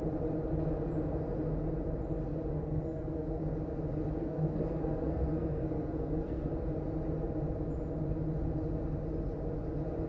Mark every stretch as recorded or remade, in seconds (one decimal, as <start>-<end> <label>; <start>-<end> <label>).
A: 0.0-2.5 recorded; 2.5-3.4 remade; 3.4-4.2 recorded; 4.2-6.5 remade; 6.5-10.1 recorded